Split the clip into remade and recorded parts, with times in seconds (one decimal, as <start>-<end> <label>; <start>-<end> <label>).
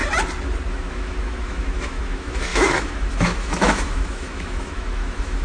0.0-0.7 recorded; 0.7-5.4 remade